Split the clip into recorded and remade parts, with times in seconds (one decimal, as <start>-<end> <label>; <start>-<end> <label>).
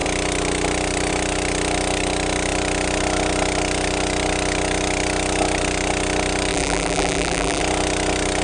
0.0-6.5 recorded; 6.5-7.6 remade; 7.6-8.4 recorded